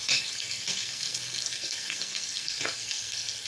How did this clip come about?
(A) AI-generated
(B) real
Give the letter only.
A